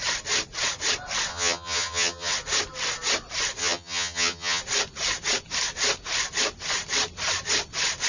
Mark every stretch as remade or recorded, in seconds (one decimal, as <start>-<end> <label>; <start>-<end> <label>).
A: 0.0-1.3 recorded; 1.3-2.3 remade; 2.3-3.6 recorded; 3.6-4.6 remade; 4.6-8.1 recorded